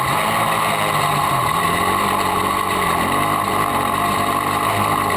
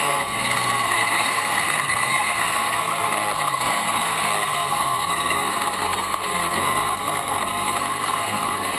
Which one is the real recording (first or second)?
first